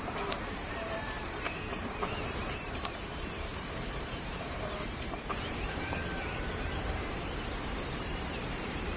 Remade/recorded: remade